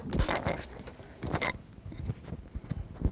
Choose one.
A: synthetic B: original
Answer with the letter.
B